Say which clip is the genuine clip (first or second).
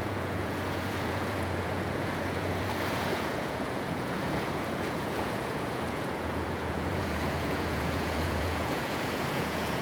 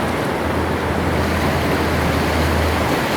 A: second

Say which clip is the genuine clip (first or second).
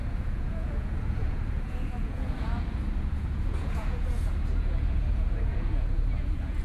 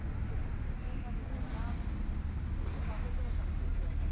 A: second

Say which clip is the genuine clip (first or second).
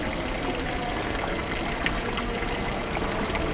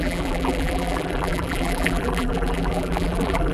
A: first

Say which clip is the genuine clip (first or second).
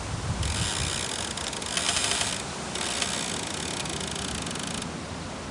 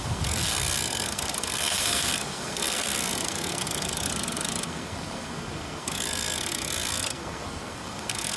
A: first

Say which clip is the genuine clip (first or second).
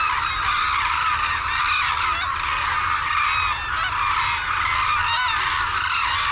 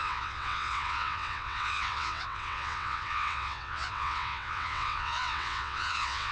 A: first